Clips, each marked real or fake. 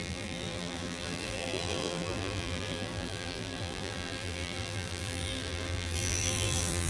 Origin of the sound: fake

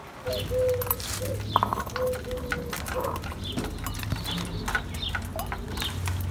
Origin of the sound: real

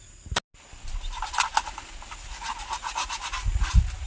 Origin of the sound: real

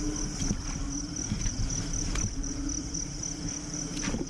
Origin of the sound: fake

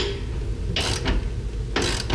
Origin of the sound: real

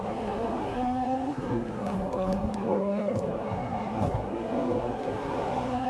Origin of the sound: fake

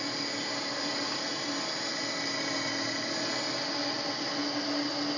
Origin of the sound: real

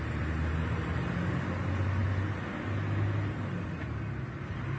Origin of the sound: real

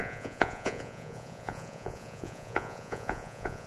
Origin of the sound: fake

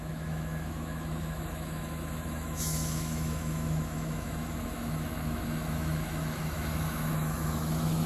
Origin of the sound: fake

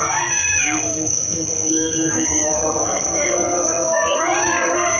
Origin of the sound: fake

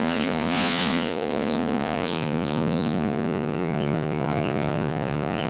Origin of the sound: fake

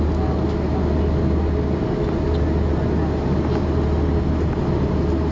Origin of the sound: real